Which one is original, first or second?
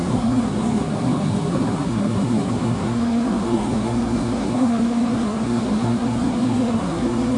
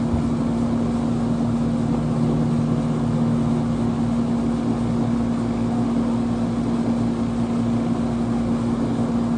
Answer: second